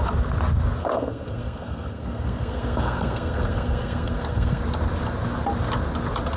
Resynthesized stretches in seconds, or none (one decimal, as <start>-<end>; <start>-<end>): 0.8-4.6